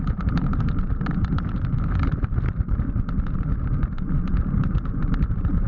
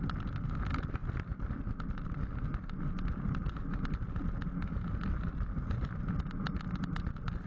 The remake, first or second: first